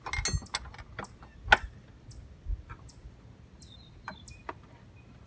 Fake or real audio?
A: real